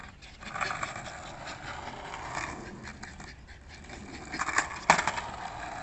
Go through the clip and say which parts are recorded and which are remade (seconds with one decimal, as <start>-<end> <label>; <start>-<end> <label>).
0.0-2.9 recorded; 2.9-3.9 remade; 3.9-5.8 recorded